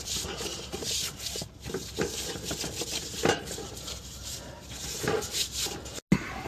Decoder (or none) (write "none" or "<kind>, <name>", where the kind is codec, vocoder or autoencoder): none